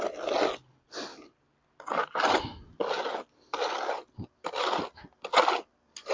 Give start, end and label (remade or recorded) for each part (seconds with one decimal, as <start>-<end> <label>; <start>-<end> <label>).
0.0-6.1 recorded